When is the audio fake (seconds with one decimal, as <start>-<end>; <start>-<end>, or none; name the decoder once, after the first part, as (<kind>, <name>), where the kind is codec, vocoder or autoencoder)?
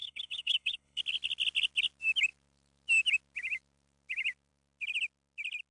0.0-1.0 (codec, HILCodec)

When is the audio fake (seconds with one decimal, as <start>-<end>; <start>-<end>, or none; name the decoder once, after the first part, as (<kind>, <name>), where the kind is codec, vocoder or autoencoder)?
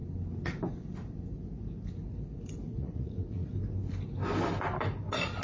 2.7-3.5 (vocoder, Vocos)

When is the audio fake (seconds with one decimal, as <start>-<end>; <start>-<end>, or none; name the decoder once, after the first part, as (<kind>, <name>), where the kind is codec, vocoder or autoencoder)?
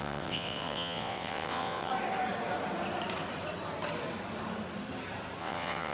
0.0-1.9 (vocoder, WaveNeXt); 5.4-5.9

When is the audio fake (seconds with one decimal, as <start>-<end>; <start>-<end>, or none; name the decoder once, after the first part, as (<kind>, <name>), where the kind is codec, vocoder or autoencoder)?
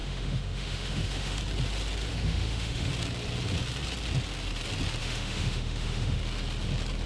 0.0-1.4 (autoencoder, DAC-VAE); 2.1-2.9; 5.0-6.2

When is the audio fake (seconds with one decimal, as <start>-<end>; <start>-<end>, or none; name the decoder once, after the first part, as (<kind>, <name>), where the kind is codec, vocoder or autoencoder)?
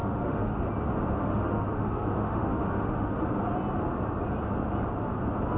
0.0-0.7 (autoencoder, DAC-VAE); 1.2-3.2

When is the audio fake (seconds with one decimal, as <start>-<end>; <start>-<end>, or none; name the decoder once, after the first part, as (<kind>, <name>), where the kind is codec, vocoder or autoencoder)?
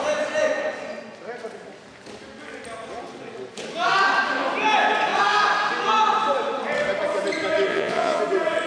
7.7-8.2 (vocoder, Vocos)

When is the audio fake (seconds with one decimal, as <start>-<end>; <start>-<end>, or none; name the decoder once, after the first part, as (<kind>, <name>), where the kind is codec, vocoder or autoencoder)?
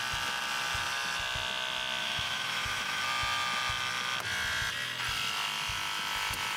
2.0-3.0 (autoencoder, DAC-VAE)